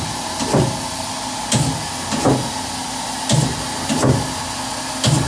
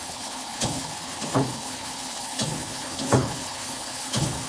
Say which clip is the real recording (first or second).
first